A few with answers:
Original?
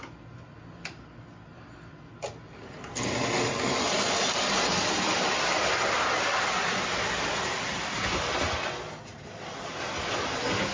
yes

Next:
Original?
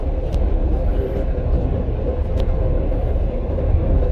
yes